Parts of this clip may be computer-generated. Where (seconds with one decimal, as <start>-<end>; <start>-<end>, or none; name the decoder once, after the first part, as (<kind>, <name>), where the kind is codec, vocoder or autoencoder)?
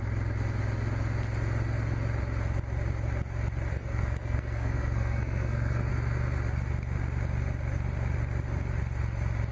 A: 3.7-5.9 (codec, SNAC)